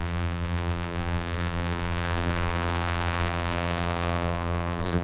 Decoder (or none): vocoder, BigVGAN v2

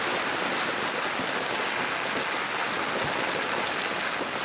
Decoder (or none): none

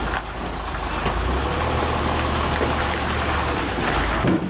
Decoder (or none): none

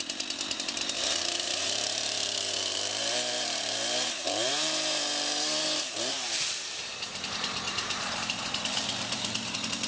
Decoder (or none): vocoder, BigVGAN v2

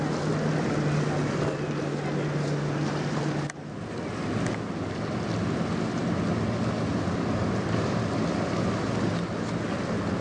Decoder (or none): none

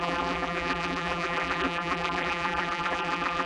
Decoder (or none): vocoder, BigVGAN v2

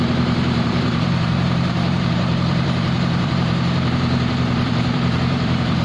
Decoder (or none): vocoder, BigVGAN v2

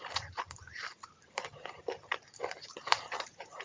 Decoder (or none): vocoder, BigVGAN v2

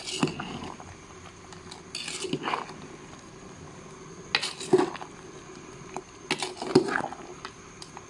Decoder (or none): none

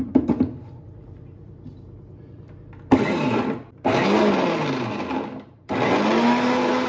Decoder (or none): none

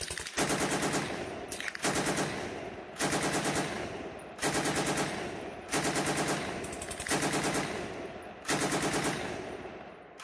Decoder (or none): none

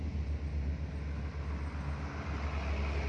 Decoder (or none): none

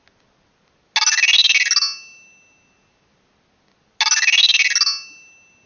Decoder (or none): none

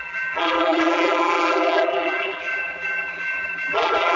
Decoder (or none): vocoder, BigVGAN v2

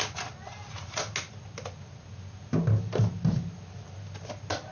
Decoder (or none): none